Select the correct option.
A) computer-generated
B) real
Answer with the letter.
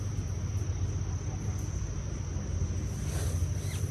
B